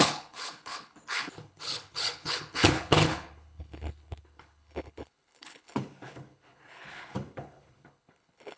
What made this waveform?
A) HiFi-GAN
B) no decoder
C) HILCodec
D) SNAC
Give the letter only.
C